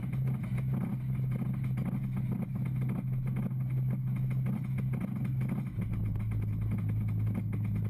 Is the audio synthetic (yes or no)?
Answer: no